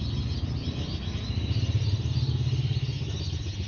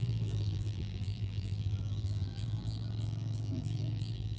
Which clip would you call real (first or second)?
first